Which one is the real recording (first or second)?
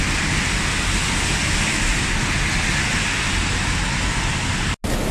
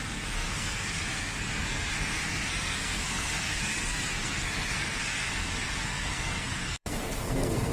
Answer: first